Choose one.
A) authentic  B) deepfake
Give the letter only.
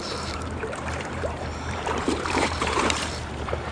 B